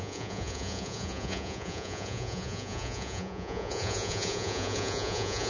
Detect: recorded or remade remade